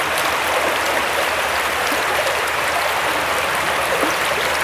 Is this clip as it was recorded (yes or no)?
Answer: yes